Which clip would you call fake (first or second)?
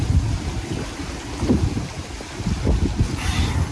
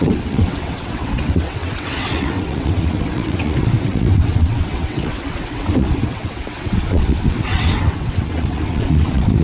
second